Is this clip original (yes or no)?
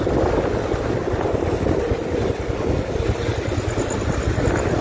yes